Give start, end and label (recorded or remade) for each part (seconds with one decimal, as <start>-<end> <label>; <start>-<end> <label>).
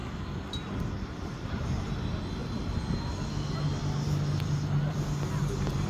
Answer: 0.0-5.9 recorded